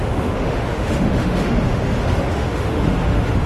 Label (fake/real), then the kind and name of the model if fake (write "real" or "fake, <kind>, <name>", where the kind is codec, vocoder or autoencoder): fake, autoencoder, DAC-VAE